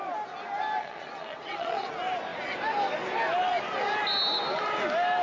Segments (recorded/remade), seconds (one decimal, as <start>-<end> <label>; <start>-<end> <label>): 0.0-0.8 recorded; 0.8-1.9 remade; 1.9-5.2 recorded